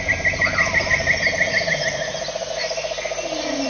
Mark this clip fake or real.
real